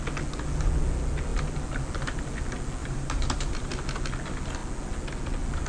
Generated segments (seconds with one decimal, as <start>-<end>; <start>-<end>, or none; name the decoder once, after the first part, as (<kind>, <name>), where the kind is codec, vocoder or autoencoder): 2.8-3.7 (vocoder, BigVGAN v2)